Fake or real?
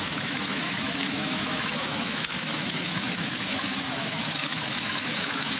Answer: fake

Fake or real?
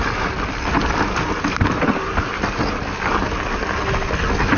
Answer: real